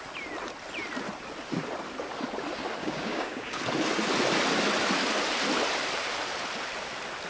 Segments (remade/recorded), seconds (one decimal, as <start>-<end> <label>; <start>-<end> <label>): 0.0-2.8 recorded; 2.8-3.6 remade; 3.6-7.3 recorded